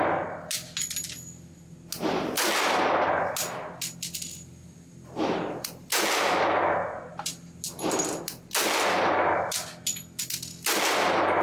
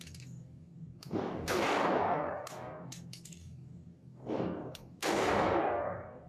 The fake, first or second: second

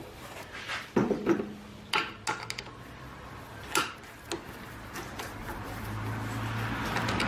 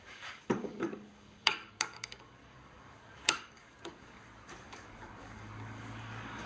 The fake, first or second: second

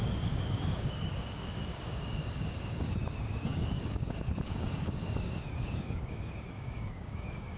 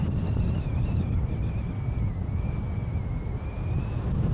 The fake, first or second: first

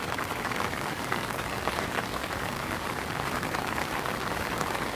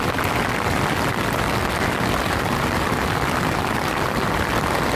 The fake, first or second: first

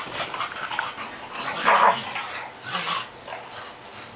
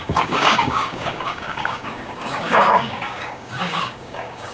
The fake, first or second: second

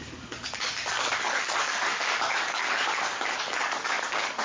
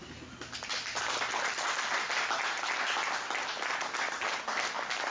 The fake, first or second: first